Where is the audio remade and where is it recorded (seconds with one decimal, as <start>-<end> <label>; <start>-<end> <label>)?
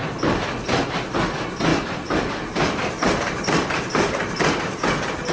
0.0-1.7 recorded; 1.7-4.6 remade; 4.6-5.3 recorded